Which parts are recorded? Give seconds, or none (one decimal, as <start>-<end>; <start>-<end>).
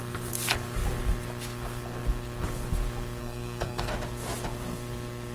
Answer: 0.0-3.2; 3.9-5.3